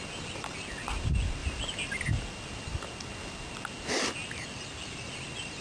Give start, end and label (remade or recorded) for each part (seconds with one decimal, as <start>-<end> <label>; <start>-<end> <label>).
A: 0.0-1.4 recorded; 1.4-2.2 remade; 2.2-4.2 recorded; 4.2-5.6 remade